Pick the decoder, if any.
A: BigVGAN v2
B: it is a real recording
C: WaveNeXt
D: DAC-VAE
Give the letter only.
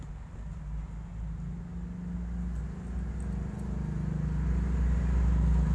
B